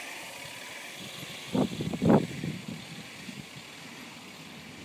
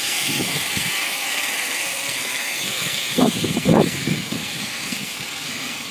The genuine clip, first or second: first